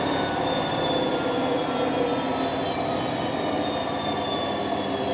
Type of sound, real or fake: real